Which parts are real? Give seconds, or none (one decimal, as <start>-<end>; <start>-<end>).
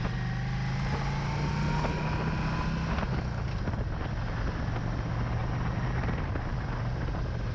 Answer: 0.0-7.5